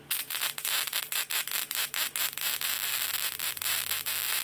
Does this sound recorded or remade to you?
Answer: recorded